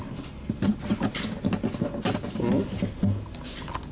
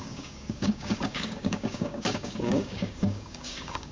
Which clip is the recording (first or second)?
first